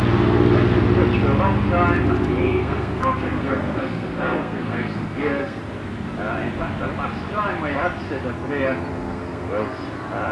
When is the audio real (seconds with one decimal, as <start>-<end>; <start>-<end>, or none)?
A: 0.0-2.4; 5.6-8.9; 9.5-10.3

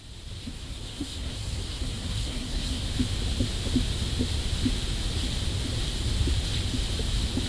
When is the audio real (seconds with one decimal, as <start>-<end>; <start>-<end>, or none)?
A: 0.0-0.4; 2.8-7.5

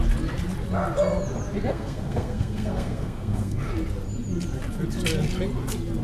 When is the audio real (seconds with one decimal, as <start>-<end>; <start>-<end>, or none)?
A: 0.0-1.7; 3.7-6.0

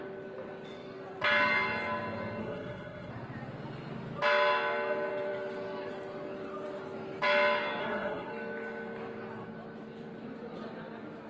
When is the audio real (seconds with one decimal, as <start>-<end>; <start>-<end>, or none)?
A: 0.0-2.4; 3.1-7.8; 8.3-11.3

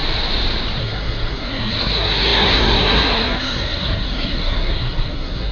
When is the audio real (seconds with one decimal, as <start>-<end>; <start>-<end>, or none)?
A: 0.0-0.8

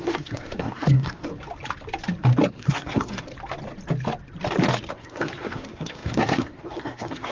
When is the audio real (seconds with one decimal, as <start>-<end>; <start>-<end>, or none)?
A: 1.3-2.5; 3.3-4.9